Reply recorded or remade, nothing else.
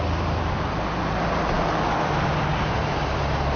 recorded